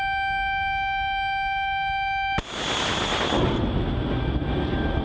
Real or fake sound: real